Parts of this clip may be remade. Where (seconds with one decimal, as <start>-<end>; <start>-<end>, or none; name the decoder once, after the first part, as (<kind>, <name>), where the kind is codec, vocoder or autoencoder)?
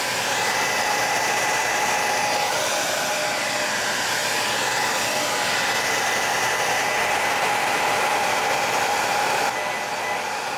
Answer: none